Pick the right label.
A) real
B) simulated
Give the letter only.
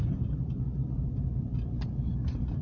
B